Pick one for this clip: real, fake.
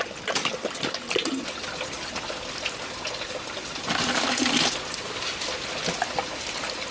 real